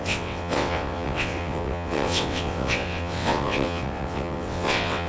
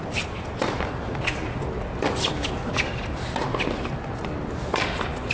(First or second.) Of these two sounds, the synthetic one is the first